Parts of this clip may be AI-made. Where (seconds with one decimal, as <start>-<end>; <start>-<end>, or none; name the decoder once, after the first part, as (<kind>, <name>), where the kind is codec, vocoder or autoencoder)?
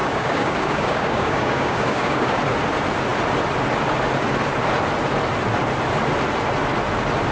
0.0-2.4 (codec, DAC)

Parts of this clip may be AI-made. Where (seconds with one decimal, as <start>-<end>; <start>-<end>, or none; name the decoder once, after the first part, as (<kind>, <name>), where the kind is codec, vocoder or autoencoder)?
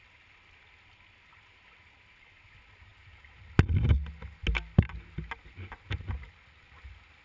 none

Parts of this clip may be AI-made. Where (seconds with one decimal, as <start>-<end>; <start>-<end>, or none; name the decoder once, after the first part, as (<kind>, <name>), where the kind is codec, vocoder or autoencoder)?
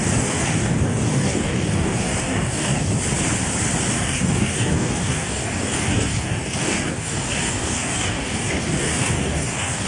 0.0-2.9 (codec, DAC); 3.9-9.9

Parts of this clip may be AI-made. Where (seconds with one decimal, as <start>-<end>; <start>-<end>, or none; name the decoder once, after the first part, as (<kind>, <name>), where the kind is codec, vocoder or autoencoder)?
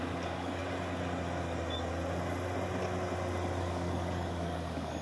0.0-0.6 (codec, DAC); 3.6-5.0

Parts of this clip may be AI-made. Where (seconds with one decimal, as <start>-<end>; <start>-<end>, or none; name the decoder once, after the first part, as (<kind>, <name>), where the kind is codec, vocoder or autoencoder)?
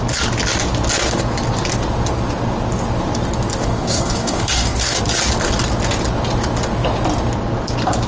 3.6-5.0 (codec, DAC)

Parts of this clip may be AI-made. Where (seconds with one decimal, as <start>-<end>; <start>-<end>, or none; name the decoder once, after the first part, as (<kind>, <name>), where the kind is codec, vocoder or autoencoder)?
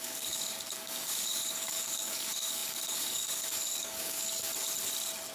0.0-4.5 (codec, DAC)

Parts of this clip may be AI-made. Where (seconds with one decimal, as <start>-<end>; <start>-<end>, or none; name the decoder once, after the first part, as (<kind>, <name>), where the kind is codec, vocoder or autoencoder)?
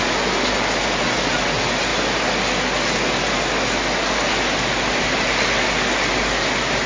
none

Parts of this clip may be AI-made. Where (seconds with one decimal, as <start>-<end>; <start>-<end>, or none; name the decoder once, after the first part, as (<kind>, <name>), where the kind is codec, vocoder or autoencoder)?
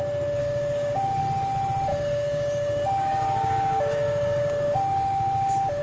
0.4-1.2 (codec, DAC); 1.9-5.8